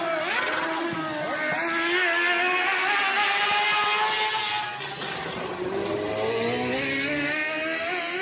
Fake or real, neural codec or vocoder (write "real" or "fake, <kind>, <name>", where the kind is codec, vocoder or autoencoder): real